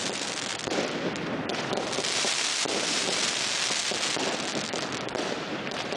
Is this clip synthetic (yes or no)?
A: yes